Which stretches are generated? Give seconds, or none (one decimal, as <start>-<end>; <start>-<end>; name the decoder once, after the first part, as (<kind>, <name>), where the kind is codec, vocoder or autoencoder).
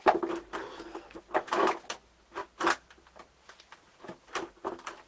0.6-1.2 (codec, SNAC)